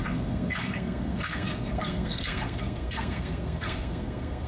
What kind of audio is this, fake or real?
fake